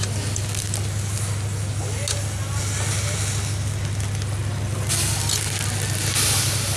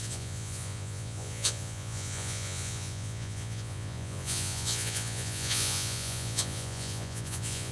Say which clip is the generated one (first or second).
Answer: second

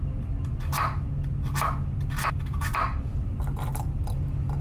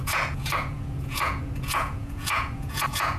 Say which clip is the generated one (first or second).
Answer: second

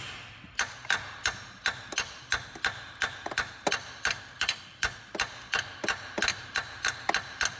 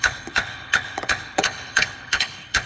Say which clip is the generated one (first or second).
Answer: second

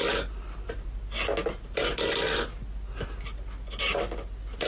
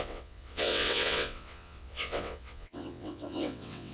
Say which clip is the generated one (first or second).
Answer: second